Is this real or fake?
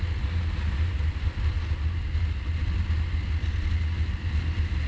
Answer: real